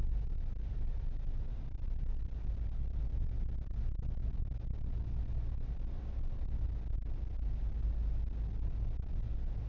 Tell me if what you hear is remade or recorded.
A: recorded